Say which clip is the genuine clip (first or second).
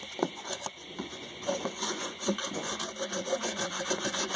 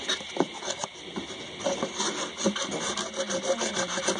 second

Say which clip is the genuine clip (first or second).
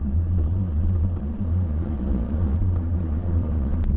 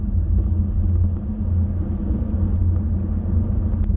second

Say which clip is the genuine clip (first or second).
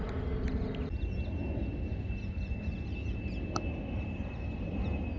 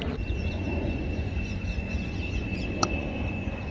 first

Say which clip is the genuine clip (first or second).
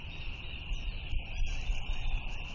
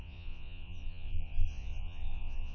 first